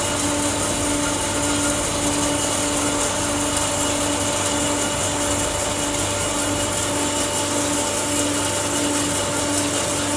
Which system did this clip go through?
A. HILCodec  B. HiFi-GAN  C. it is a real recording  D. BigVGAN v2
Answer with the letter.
C